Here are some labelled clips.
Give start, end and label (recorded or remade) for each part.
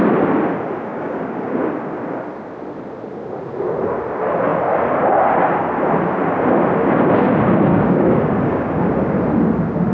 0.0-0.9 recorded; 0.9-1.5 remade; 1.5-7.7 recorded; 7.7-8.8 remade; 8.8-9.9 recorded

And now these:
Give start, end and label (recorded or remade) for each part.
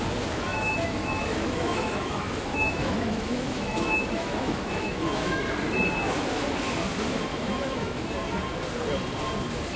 0.0-0.5 recorded; 0.5-5.4 remade; 5.4-7.3 recorded; 7.3-8.0 remade; 8.0-9.8 recorded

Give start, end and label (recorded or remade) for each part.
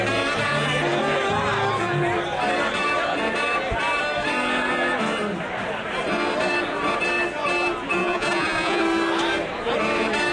0.0-8.0 recorded; 8.0-8.8 remade; 8.8-10.3 recorded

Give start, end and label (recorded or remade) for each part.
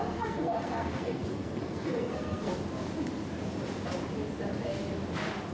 0.0-2.5 remade; 2.5-5.5 recorded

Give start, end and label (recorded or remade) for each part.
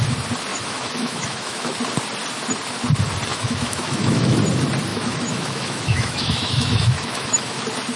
0.0-0.5 recorded; 0.5-1.8 remade; 1.8-3.3 recorded; 3.3-4.4 remade; 4.4-4.9 recorded; 4.9-7.6 remade; 7.6-8.0 recorded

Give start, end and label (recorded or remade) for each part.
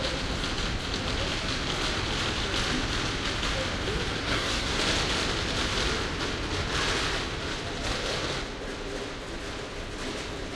0.0-4.2 recorded; 4.2-4.8 remade; 4.8-10.6 recorded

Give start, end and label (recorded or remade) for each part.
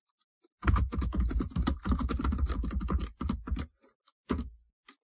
0.0-2.2 remade; 2.2-5.0 recorded